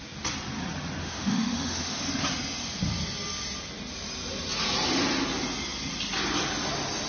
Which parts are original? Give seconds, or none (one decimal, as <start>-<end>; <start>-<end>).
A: 0.0-1.0; 2.1-7.1